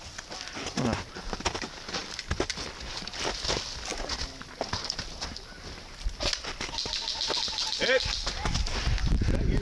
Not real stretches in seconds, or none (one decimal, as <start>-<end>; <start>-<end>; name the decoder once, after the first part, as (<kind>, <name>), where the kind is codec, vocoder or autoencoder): none